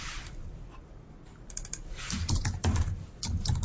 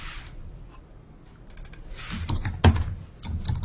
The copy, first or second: first